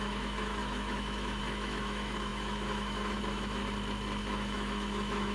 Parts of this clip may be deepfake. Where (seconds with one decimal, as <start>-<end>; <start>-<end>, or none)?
0.0-3.6; 4.2-5.3